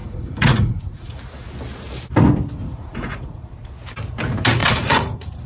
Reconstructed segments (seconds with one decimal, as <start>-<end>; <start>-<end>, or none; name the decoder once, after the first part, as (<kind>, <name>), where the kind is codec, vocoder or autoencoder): 0.0-1.2 (vocoder, Vocos); 2.6-3.5; 4.6-5.5